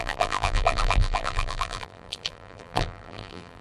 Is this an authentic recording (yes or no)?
no